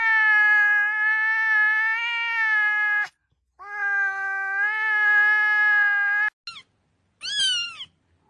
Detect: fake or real real